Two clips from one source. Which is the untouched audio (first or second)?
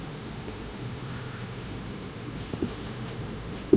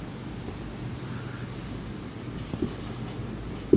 second